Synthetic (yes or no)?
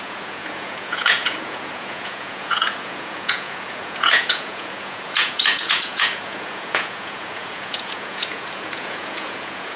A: yes